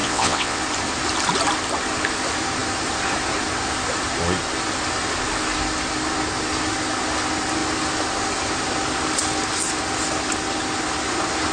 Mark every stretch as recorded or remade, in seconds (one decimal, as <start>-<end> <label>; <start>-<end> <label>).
0.0-0.6 remade; 0.6-11.5 recorded